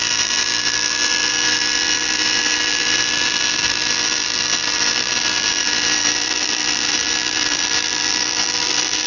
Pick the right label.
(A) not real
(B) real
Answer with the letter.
A